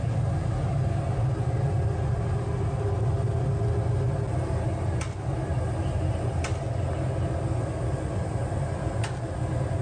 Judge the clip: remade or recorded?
recorded